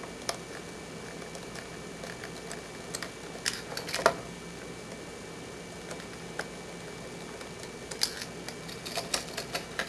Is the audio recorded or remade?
recorded